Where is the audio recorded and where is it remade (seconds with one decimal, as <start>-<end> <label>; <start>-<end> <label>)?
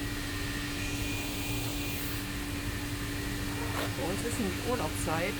0.0-4.0 recorded; 4.0-4.9 remade; 4.9-5.4 recorded